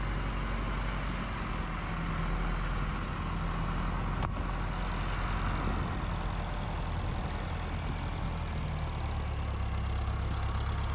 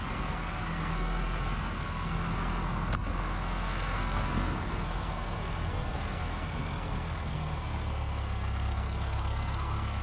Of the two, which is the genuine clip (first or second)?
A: first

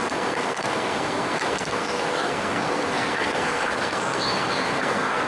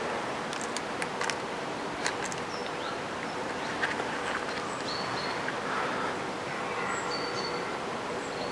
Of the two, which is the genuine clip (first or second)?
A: second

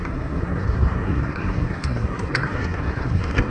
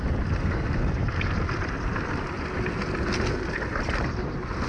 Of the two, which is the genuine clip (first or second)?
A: second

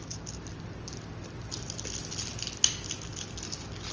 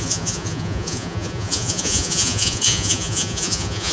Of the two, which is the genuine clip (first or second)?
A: first